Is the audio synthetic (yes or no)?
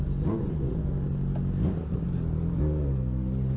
no